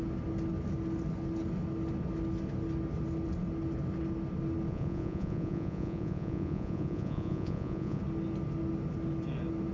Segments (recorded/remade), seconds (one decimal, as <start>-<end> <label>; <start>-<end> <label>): 0.0-4.7 recorded; 4.7-8.0 remade; 8.0-9.7 recorded